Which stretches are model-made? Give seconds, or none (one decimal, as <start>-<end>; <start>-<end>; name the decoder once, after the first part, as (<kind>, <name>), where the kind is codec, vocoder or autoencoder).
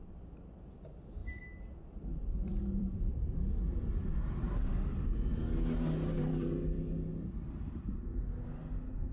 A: 1.2-4.3 (vocoder, BigVGAN v2); 7.1-8.6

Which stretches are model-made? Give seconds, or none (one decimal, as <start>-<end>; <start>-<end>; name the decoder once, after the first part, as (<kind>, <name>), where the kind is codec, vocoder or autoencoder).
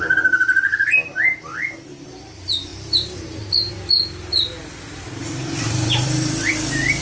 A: 0.0-0.7 (vocoder, BigVGAN v2); 2.0-7.0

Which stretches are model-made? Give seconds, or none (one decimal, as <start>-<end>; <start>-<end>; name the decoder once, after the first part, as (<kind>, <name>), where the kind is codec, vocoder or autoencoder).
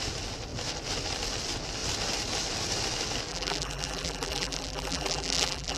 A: 3.3-5.8 (vocoder, BigVGAN v2)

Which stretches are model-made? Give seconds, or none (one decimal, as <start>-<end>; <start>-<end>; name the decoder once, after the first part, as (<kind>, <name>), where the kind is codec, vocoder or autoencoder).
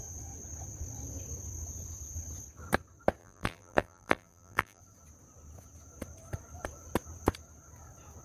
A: 3.2-4.8 (vocoder, BigVGAN v2)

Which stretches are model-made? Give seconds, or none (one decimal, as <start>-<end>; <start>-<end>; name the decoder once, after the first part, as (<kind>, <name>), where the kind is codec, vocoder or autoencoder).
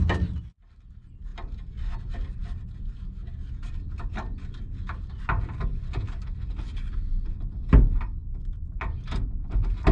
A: 1.3-1.8 (vocoder, BigVGAN v2)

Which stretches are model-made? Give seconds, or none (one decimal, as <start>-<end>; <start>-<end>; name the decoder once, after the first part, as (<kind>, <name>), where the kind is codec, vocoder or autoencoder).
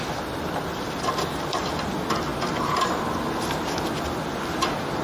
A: none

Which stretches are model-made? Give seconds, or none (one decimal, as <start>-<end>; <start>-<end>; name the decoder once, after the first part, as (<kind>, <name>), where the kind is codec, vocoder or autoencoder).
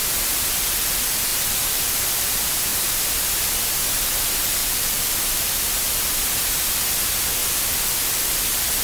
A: 1.3-2.3 (vocoder, BigVGAN v2); 4.6-5.9; 7.4-8.8